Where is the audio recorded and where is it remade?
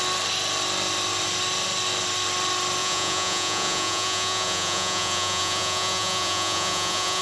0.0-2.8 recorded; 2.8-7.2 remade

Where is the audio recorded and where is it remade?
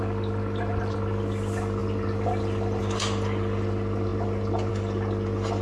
0.0-5.6 recorded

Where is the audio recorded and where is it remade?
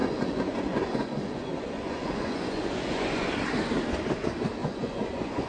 0.0-3.3 remade; 3.3-4.6 recorded; 4.6-5.5 remade